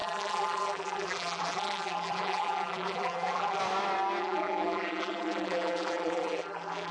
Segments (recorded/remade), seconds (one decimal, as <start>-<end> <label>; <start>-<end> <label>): 0.0-3.6 remade; 3.6-4.2 recorded; 4.2-6.9 remade